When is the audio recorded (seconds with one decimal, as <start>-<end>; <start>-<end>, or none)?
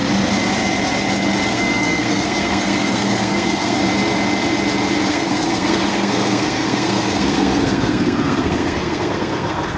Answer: 0.0-1.5; 3.8-5.1